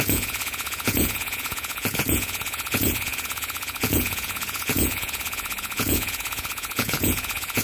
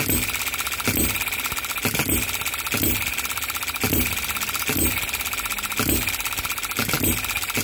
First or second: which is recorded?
second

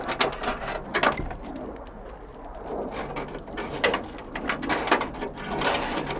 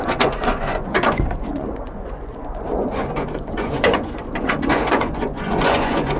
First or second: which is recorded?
first